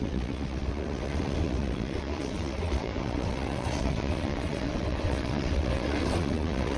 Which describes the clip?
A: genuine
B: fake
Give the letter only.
B